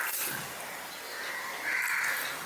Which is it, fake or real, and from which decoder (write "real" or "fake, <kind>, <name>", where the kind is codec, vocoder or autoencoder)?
real